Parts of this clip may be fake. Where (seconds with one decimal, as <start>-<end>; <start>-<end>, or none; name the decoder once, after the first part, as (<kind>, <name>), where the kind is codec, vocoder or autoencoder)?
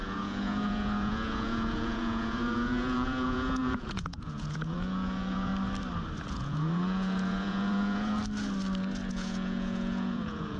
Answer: 0.0-5.5 (vocoder, Vocos); 6.3-8.2; 9.1-10.6